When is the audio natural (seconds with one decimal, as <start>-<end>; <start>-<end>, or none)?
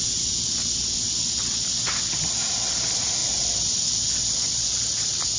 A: 0.0-5.4